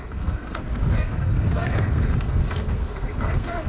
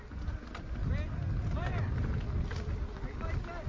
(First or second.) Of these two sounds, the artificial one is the first